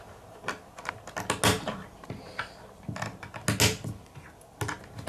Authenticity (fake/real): real